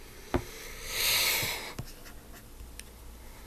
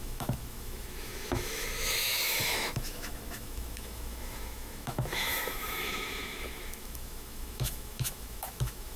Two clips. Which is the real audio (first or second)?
first